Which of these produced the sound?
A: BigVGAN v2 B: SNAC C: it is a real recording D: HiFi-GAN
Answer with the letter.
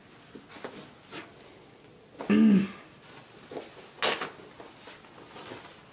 C